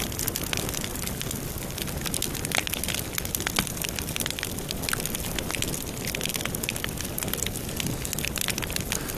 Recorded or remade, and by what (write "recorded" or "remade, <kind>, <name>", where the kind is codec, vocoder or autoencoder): recorded